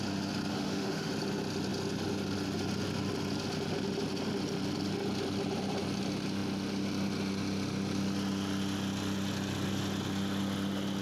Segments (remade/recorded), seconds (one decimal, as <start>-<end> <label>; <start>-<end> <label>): 0.0-0.5 recorded; 0.5-1.1 remade; 1.1-11.0 recorded